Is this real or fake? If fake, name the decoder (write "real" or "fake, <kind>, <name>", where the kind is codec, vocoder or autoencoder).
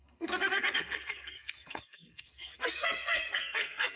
fake, codec, SNAC